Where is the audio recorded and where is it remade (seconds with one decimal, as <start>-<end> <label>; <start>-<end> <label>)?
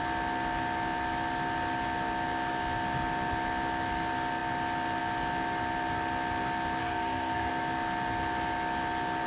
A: 0.0-6.8 recorded; 6.8-7.5 remade; 7.5-9.3 recorded